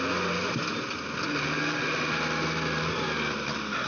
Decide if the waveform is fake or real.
real